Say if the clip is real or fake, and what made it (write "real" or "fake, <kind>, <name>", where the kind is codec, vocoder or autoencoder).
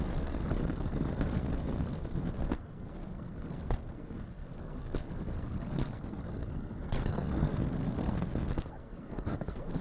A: fake, codec, SNAC